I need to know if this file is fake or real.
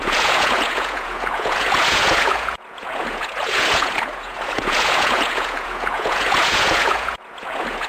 fake